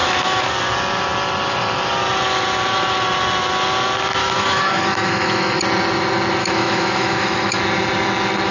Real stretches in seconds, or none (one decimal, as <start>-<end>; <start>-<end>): 0.5-4.2; 5.6-6.4; 7.6-8.5